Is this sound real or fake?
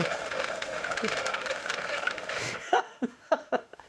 fake